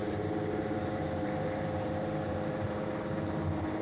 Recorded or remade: remade